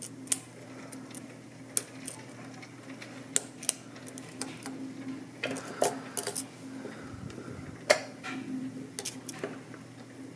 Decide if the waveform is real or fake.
real